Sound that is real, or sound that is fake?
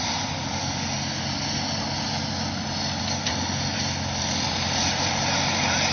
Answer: real